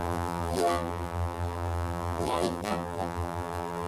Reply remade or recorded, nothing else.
remade